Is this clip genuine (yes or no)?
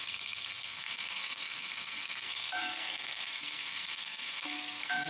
no